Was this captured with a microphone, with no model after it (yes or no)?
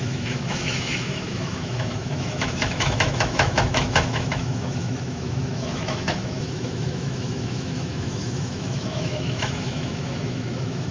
no